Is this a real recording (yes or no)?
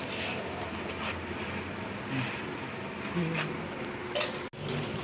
yes